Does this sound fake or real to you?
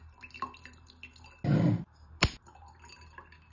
real